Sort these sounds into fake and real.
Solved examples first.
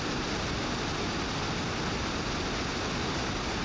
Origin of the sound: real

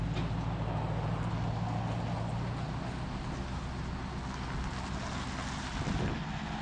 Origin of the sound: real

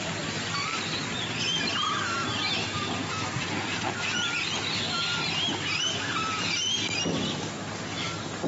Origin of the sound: real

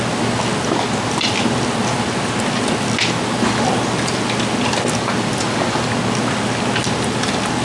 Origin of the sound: real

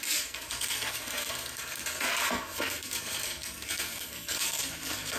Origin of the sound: fake